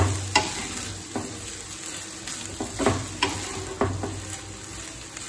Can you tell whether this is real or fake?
real